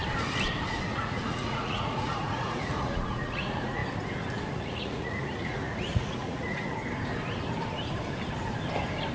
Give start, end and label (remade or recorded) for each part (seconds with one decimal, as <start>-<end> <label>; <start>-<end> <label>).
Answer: 0.0-0.9 recorded; 0.9-3.8 remade; 3.8-4.5 recorded; 4.5-6.8 remade; 6.8-9.1 recorded